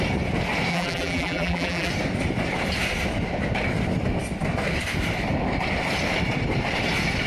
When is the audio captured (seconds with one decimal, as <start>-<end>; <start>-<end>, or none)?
0.0-0.7; 1.9-7.3